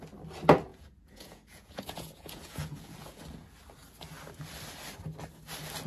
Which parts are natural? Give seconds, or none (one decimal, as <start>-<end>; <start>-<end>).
0.0-0.7; 3.2-5.9